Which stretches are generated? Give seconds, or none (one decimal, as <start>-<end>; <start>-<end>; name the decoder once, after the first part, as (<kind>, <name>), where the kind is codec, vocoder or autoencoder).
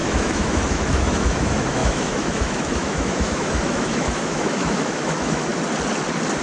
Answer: 0.0-5.5 (autoencoder, DAC-VAE)